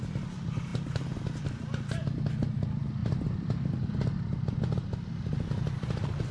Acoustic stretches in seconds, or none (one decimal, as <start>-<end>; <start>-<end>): 0.0-3.0; 3.9-6.3